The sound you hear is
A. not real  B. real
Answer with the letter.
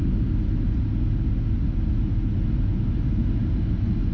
B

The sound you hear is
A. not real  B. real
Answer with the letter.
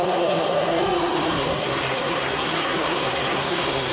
A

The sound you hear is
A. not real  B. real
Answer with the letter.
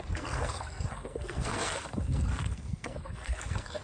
A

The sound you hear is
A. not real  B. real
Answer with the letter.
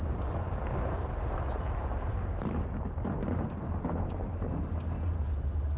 B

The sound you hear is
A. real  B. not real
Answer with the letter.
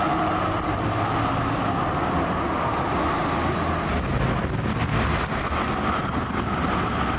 A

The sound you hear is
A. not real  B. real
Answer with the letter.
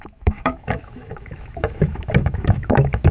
A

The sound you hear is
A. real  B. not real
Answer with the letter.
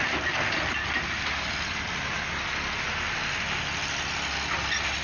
A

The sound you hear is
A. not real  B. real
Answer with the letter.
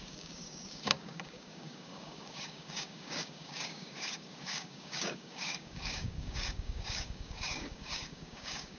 A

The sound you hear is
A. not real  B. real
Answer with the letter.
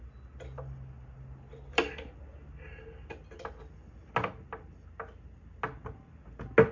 B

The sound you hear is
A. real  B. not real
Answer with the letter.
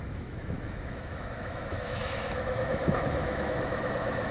B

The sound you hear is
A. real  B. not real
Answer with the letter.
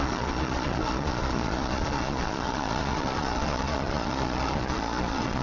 B